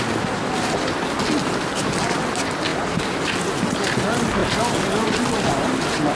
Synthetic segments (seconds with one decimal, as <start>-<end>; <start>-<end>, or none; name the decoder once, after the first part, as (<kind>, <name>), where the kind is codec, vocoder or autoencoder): none